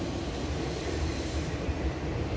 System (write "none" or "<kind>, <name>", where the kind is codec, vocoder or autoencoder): none